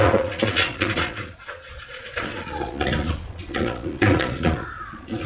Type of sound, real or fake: fake